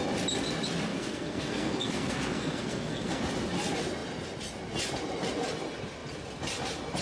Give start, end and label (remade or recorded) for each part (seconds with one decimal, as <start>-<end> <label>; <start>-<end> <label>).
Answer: 0.0-0.9 recorded; 0.9-3.2 remade; 3.2-7.0 recorded